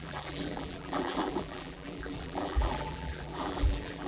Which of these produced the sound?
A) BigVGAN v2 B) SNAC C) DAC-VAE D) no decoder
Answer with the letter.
A